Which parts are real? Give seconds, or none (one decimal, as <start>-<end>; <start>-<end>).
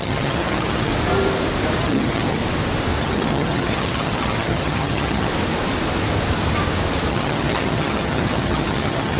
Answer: 0.9-1.8; 2.4-3.0; 5.3-7.1